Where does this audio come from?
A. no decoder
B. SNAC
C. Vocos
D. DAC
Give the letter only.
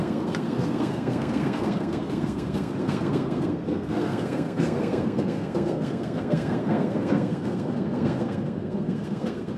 B